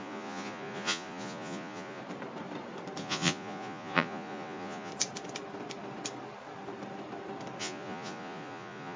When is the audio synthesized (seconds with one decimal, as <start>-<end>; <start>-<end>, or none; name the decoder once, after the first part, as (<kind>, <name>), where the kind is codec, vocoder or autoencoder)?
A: 0.0-2.0 (vocoder, Vocos); 3.0-4.9; 7.6-9.0